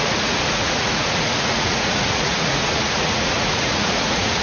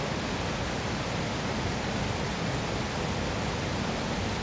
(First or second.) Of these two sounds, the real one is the second